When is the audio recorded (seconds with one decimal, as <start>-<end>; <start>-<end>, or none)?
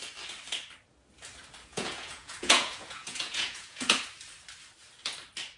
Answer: 0.0-1.7; 4.0-5.6